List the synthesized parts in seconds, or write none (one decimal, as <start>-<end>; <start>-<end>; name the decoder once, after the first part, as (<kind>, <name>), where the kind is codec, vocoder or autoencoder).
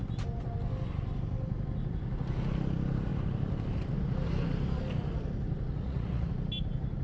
5.7-6.3 (vocoder, Vocos)